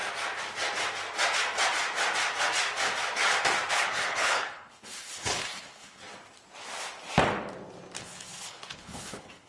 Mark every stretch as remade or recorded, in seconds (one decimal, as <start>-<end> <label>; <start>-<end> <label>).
0.0-3.7 recorded; 3.7-6.0 remade; 6.0-8.0 recorded; 8.0-9.5 remade